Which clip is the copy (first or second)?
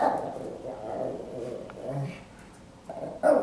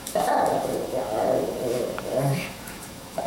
second